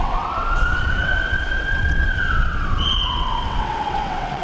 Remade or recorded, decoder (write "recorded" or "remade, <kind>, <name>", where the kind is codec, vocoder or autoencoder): remade, vocoder, WaveNeXt